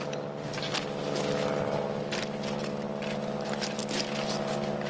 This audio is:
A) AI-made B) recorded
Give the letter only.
B